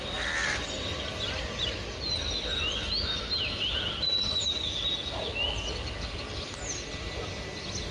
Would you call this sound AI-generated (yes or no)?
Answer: no